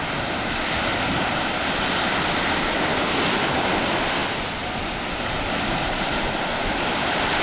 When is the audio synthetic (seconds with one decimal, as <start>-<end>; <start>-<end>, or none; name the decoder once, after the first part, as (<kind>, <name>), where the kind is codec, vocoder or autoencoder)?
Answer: none